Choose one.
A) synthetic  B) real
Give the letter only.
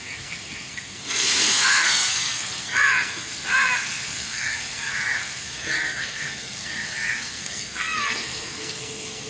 A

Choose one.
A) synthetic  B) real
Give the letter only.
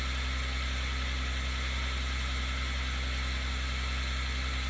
B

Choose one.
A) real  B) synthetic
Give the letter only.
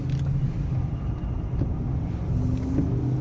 A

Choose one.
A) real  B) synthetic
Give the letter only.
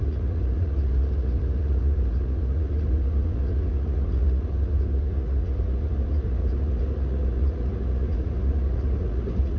B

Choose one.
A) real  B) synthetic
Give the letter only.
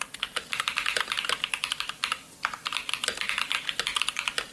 A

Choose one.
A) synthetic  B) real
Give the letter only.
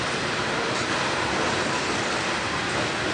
B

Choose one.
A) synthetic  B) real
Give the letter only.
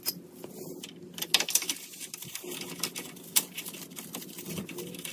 B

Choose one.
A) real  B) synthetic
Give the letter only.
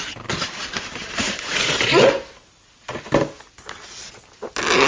A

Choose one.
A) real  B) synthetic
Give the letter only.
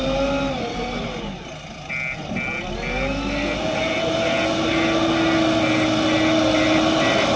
A